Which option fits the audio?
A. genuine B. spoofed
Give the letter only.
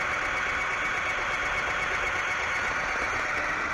A